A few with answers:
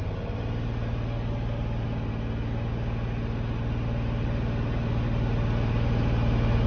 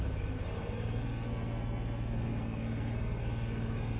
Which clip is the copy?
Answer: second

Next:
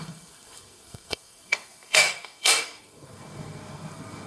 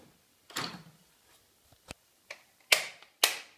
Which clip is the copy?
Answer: first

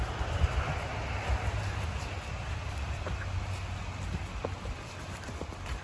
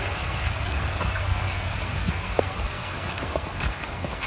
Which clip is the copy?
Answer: second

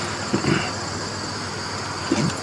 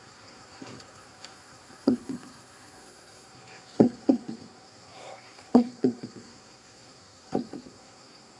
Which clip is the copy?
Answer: second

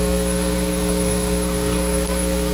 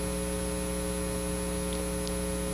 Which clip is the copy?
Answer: first